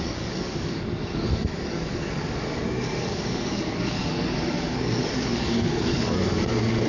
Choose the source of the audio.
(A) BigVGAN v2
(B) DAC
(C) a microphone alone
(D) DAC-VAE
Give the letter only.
B